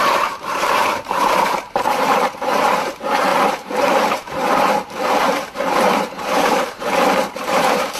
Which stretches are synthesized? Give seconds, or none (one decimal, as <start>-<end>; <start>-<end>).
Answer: 0.0-8.0